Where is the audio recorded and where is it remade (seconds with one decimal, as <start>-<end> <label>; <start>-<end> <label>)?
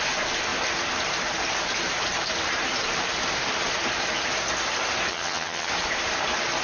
0.0-5.1 recorded; 5.1-5.7 remade; 5.7-6.6 recorded